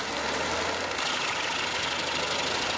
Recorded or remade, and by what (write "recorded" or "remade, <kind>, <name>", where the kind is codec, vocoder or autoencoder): recorded